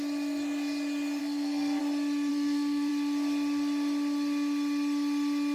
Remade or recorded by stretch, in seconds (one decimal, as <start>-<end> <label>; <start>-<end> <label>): 0.0-1.2 recorded; 1.2-1.8 remade; 1.8-2.3 recorded; 2.3-2.9 remade; 2.9-5.5 recorded